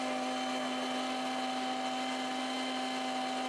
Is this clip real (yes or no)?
yes